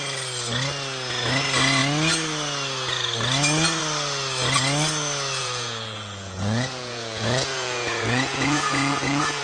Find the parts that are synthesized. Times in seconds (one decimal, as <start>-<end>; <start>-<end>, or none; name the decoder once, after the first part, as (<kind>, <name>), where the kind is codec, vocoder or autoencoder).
5.4-9.4 (vocoder, Vocos)

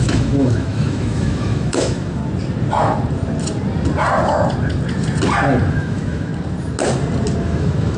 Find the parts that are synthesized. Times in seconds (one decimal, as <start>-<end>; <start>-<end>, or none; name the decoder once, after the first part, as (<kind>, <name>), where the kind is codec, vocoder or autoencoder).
0.0-2.2 (autoencoder, DAC-VAE); 5.7-6.3; 7.4-8.0

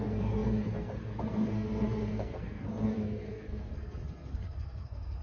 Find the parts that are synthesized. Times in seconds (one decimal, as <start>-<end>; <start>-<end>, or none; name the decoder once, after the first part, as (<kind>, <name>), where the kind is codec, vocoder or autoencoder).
0.0-5.2 (codec, SNAC)

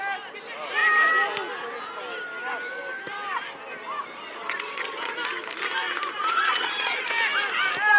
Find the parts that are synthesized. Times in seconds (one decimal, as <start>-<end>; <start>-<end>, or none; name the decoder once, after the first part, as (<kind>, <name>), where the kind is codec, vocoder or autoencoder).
4.3-5.1 (vocoder, Vocos); 6.2-7.1

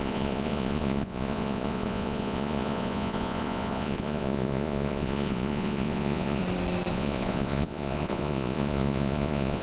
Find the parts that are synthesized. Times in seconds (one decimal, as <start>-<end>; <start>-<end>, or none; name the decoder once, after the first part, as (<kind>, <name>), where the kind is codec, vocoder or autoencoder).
0.0-6.4 (vocoder, Vocos); 6.9-9.6

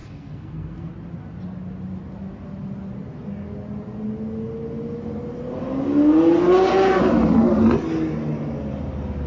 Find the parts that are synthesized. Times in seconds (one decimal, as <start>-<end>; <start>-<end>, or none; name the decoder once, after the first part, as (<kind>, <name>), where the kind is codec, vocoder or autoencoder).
0.0-0.9 (codec, SNAC)

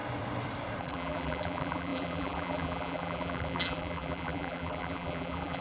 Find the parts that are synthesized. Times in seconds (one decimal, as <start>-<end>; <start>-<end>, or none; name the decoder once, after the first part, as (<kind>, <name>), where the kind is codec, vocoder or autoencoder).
0.8-5.6 (vocoder, BigVGAN v2)

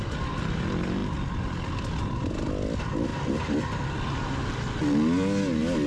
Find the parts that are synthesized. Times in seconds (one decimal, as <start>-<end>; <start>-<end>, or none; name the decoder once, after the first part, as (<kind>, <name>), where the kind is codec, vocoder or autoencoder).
3.1-3.9 (vocoder, BigVGAN v2)